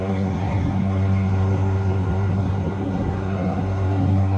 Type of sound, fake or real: fake